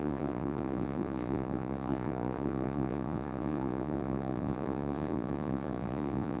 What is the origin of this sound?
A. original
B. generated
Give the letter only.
B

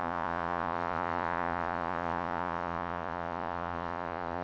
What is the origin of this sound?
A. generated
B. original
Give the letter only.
A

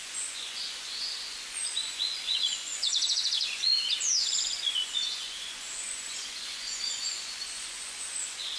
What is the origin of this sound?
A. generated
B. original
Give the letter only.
A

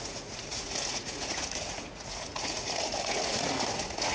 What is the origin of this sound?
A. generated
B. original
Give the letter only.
A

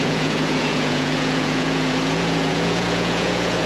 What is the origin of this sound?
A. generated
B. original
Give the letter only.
A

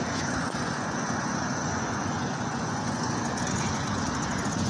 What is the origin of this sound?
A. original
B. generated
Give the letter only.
B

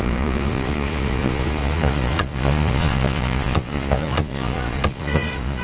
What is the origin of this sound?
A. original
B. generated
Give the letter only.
B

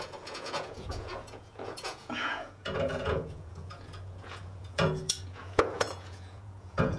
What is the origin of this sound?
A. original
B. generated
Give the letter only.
B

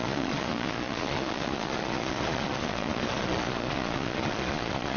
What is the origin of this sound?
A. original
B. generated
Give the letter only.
B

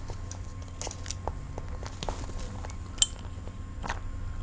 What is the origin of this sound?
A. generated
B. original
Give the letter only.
B